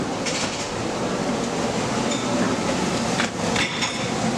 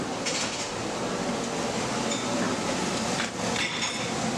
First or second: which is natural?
second